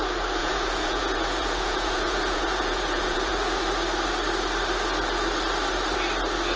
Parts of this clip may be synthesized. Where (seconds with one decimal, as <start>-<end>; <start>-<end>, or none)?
0.4-3.3